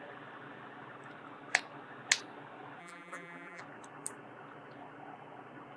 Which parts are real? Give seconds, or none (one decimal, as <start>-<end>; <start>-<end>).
0.0-2.8; 3.6-5.8